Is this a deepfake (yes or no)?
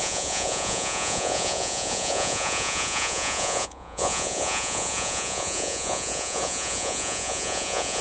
yes